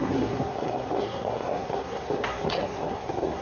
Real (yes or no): no